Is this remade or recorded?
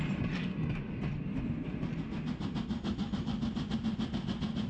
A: recorded